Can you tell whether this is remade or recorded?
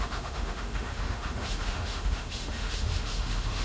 remade